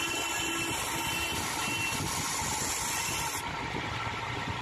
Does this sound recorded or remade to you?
recorded